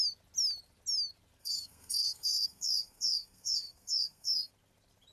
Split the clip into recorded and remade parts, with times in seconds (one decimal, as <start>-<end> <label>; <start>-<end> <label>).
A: 0.0-1.4 recorded; 1.4-4.5 remade; 4.5-5.1 recorded